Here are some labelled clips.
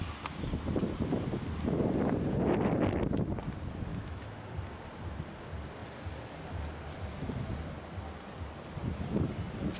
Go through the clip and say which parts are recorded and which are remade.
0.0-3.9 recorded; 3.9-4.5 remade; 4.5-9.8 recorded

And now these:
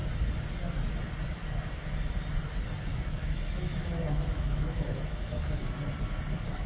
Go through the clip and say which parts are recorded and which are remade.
0.0-2.9 recorded; 2.9-5.6 remade; 5.6-6.7 recorded

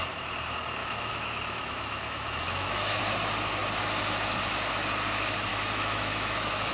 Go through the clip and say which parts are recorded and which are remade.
0.0-0.8 recorded; 0.8-3.0 remade; 3.0-5.5 recorded; 5.5-6.7 remade

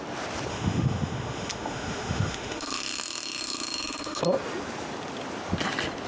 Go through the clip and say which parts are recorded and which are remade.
0.0-0.5 recorded; 0.5-4.2 remade; 4.2-6.1 recorded

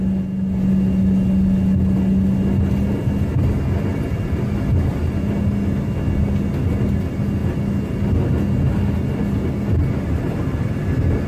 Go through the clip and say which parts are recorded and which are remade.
0.0-11.3 recorded

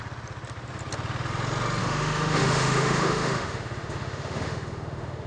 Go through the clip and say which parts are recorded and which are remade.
0.0-1.8 recorded; 1.8-5.3 remade